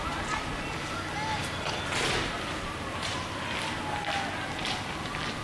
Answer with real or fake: real